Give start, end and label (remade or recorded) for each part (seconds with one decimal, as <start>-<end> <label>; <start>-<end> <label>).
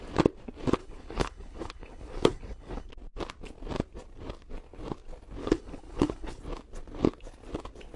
0.0-0.8 recorded; 0.8-2.9 remade; 2.9-5.4 recorded; 5.4-6.4 remade; 6.4-8.0 recorded